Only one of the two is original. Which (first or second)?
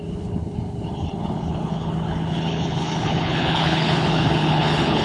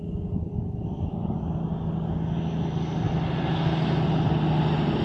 second